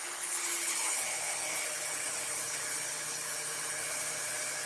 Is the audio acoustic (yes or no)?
no